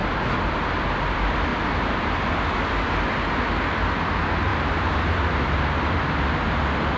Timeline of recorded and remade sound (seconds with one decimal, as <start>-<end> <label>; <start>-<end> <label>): 0.0-1.5 recorded; 1.5-2.3 remade; 2.3-4.5 recorded; 4.5-5.0 remade; 5.0-7.0 recorded